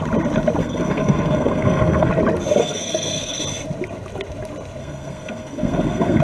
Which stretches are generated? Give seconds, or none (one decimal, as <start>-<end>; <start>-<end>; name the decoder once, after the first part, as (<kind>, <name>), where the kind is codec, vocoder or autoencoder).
0.6-2.1 (codec, SNAC); 2.6-3.4; 4.8-6.2